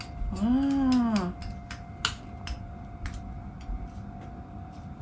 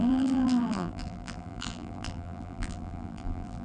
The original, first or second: first